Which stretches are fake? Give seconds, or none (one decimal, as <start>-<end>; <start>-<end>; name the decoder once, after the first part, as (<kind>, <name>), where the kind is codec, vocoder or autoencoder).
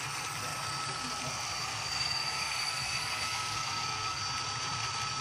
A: 1.6-4.2 (codec, SNAC)